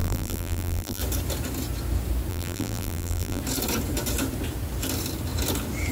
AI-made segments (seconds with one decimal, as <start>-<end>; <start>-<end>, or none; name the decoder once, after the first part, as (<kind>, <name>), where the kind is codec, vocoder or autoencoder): 0.0-1.0 (vocoder, BigVGAN v2); 2.3-3.4